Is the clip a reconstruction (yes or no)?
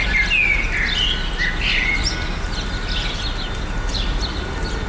no